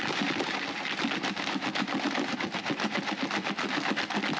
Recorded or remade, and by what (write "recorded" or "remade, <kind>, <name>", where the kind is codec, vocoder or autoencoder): recorded